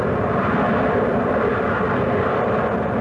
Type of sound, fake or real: real